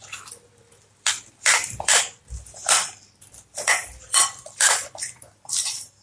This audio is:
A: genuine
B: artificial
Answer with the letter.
B